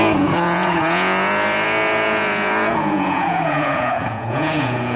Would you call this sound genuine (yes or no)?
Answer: no